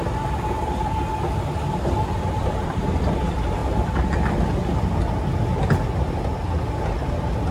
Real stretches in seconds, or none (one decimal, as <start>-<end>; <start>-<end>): 0.0-7.5